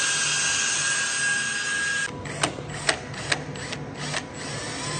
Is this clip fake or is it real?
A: real